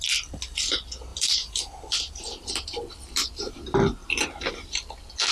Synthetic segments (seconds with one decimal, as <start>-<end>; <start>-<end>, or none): 1.1-3.5; 4.0-4.5